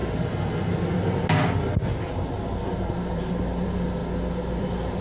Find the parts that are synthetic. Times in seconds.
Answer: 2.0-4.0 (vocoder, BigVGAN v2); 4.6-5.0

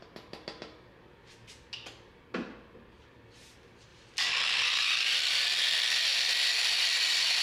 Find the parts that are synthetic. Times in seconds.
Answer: 3.9-5.6 (vocoder, BigVGAN v2); 6.1-7.4

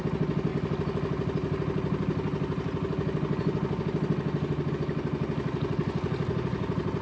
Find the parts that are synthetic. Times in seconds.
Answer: none